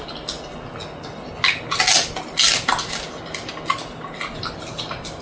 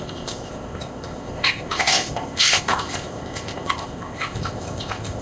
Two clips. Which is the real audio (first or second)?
first